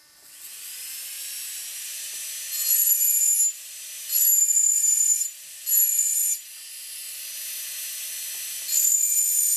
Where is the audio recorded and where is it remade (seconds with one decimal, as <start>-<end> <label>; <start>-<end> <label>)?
0.0-9.6 recorded